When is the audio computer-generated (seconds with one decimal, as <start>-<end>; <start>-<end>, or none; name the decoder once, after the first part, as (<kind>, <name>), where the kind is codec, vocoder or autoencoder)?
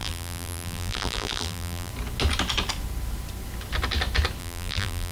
0.0-1.9 (vocoder, BigVGAN v2); 4.4-5.1